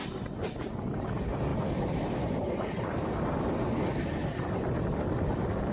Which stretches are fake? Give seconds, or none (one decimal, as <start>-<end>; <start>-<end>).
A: none